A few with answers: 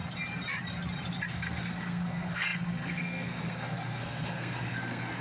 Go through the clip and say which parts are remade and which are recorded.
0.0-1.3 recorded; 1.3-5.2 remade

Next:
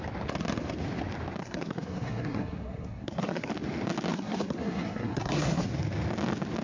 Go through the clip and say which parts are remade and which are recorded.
0.0-1.4 recorded; 1.4-3.5 remade; 3.5-4.1 recorded; 4.1-5.7 remade; 5.7-6.6 recorded

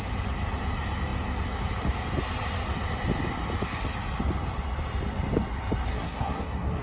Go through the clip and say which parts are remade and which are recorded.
0.0-5.9 recorded; 5.9-6.8 remade